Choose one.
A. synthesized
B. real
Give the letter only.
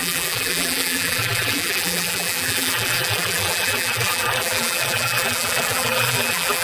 A